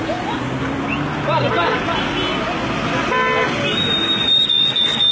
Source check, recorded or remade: recorded